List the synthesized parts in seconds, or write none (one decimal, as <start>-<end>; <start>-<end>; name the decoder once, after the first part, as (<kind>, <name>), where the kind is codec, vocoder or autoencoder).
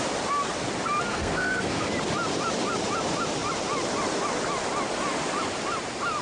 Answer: 1.1-1.9 (codec, SNAC)